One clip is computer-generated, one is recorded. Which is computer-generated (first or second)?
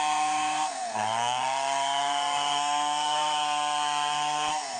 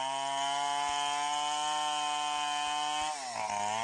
first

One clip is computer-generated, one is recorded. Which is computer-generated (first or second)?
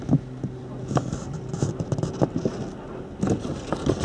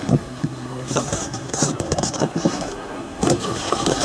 second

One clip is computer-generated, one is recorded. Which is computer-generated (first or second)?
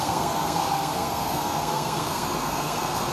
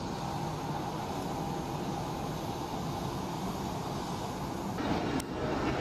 first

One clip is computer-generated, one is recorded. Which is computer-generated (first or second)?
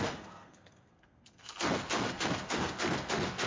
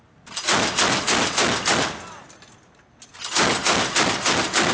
first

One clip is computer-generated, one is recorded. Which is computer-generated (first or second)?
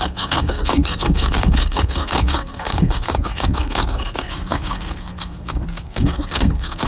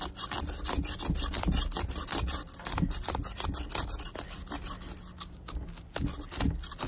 first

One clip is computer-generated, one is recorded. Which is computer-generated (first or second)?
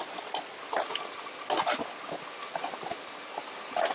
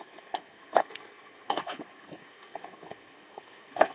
second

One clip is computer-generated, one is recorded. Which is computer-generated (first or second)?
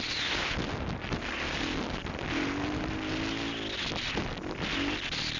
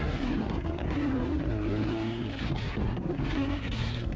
second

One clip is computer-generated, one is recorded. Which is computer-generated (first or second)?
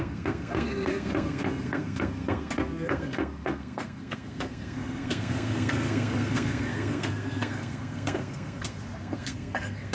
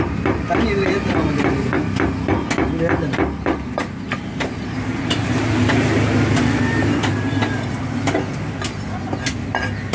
first